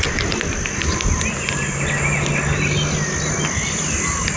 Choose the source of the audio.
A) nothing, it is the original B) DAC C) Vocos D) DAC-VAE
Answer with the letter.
A